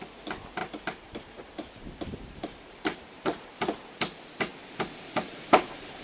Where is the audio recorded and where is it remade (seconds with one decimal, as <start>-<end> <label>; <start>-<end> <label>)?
0.0-0.6 recorded; 0.6-3.5 remade; 3.5-4.5 recorded; 4.5-6.0 remade